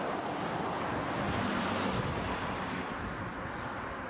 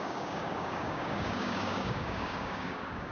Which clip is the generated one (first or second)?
second